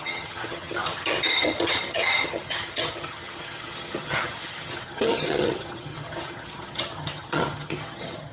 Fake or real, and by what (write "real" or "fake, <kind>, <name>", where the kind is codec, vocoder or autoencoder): fake, vocoder, HiFi-GAN